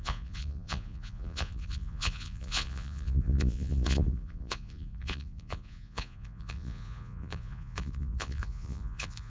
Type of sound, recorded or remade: remade